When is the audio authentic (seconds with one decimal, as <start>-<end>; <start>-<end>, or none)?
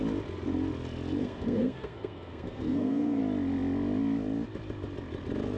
0.0-1.2; 3.2-5.6